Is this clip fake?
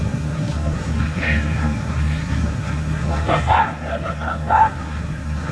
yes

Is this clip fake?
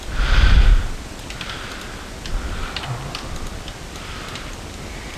no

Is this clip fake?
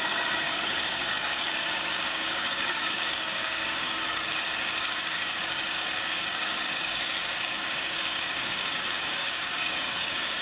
yes